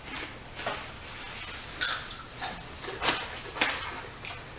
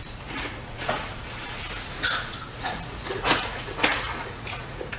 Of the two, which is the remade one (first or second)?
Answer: second